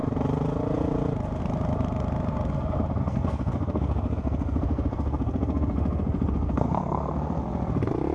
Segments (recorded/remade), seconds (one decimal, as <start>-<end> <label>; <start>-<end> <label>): 0.0-3.0 recorded; 3.0-7.4 remade; 7.4-8.1 recorded